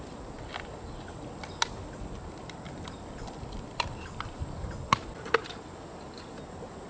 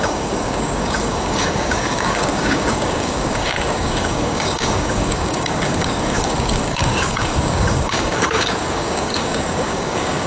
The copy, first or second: second